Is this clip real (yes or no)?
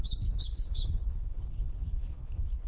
no